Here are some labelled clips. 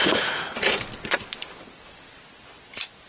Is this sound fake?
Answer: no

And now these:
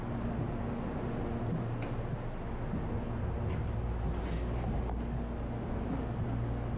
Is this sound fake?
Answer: no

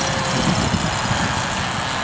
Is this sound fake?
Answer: no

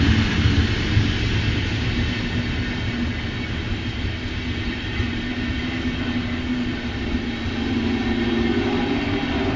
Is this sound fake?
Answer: no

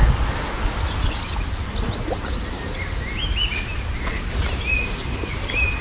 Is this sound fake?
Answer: no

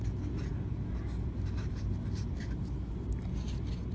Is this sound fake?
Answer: no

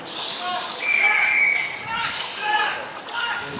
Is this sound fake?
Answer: yes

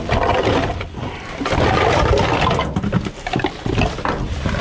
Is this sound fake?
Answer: no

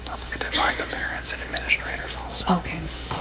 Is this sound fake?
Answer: yes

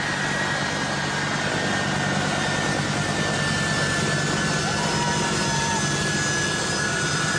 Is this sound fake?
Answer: no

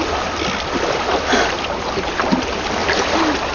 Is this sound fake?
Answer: no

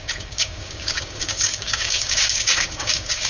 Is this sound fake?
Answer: yes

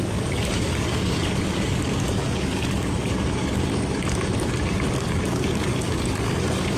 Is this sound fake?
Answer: yes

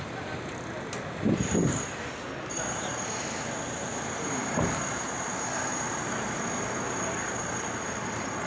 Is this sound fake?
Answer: no